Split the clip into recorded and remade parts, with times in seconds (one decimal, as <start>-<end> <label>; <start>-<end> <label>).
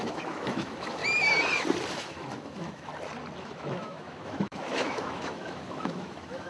0.0-1.0 remade; 1.0-1.9 recorded; 1.9-2.9 remade; 2.9-3.4 recorded; 3.4-6.5 remade